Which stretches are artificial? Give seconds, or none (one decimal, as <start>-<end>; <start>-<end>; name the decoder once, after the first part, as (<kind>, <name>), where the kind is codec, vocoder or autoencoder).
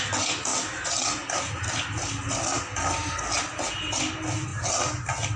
none